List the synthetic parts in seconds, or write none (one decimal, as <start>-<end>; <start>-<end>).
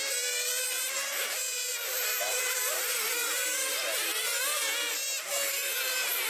none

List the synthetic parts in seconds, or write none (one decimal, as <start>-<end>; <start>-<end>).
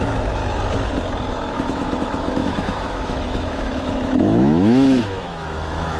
0.0-0.4; 1.3-6.0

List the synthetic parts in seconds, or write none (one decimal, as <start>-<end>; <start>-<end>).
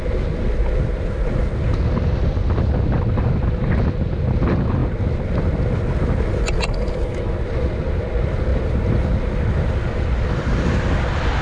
none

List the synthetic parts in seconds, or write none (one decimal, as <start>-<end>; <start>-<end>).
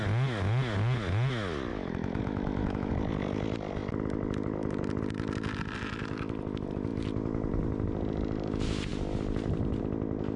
1.7-2.9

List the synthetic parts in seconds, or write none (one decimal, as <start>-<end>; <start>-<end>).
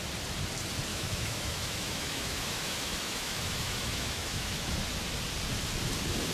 0.9-4.7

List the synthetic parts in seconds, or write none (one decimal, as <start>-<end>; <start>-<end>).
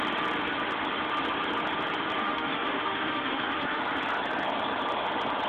2.2-3.8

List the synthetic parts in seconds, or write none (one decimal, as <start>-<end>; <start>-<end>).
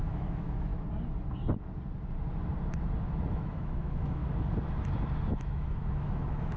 0.0-0.7; 3.3-4.2; 5.3-6.6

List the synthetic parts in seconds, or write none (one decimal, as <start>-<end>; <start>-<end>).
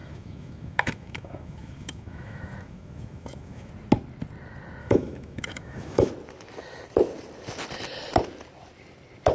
0.0-3.7; 4.8-6.1